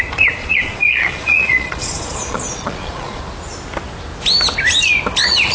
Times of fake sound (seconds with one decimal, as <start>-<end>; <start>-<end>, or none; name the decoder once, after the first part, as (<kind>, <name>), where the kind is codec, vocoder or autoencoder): 0.4-3.2 (vocoder, Vocos)